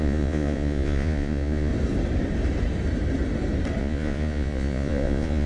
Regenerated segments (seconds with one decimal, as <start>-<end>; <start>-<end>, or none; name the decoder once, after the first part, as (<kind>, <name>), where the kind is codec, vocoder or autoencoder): 0.0-1.7 (vocoder, Vocos); 3.8-5.5